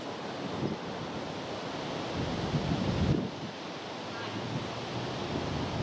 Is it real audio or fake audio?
real